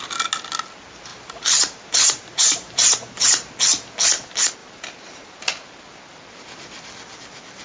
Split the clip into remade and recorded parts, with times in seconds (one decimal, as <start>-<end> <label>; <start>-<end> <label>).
0.0-1.1 recorded; 1.1-3.5 remade; 3.5-4.6 recorded; 4.6-5.5 remade; 5.5-7.6 recorded